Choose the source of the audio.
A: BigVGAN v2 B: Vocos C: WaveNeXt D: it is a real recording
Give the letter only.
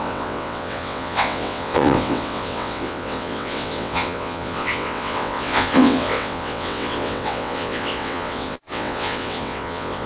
C